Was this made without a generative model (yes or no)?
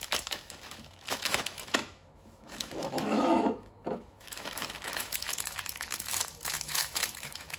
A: no